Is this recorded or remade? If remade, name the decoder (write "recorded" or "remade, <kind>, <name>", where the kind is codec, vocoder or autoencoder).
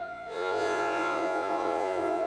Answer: remade, vocoder, Vocos